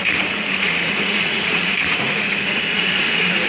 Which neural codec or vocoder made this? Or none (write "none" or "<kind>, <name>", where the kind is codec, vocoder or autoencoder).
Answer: vocoder, Vocos